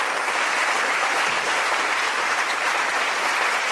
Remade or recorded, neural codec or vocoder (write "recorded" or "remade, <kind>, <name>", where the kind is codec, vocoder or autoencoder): remade, vocoder, BigVGAN v2